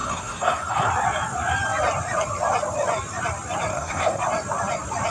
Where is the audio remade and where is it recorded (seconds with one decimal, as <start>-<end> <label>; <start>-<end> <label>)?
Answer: 0.0-0.9 remade; 0.9-3.7 recorded; 3.7-4.2 remade; 4.2-5.1 recorded